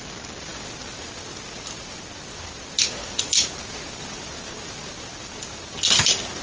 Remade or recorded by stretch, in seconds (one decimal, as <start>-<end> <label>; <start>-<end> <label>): 0.0-6.4 recorded